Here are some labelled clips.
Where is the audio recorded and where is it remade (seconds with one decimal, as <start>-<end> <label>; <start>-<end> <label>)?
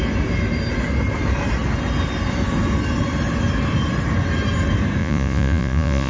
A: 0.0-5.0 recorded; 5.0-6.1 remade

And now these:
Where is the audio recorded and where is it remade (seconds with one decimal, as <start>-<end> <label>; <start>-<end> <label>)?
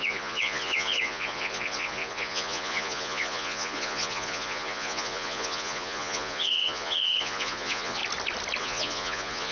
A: 0.0-8.0 remade; 8.0-8.6 recorded; 8.6-9.5 remade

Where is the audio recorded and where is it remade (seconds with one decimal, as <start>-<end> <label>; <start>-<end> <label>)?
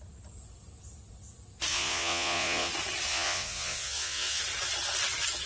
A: 0.0-1.7 recorded; 1.7-2.7 remade; 2.7-3.1 recorded; 3.1-4.4 remade; 4.4-5.5 recorded